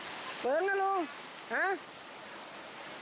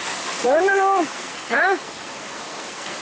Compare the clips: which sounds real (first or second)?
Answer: first